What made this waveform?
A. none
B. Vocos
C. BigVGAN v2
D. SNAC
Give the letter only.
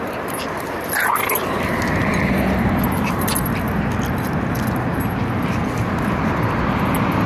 A